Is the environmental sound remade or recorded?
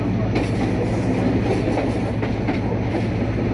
recorded